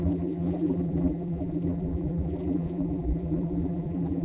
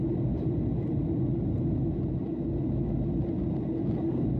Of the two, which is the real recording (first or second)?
second